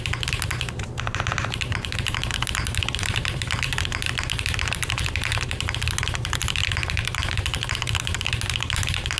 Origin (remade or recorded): remade